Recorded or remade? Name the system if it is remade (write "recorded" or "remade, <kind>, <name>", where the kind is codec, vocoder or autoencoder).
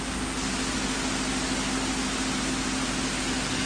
recorded